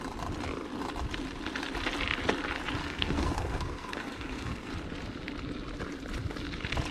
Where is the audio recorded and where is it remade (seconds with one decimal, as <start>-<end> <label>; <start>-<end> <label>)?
0.0-2.8 recorded; 2.8-4.7 remade; 4.7-6.9 recorded